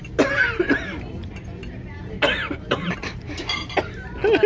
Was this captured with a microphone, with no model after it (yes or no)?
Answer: yes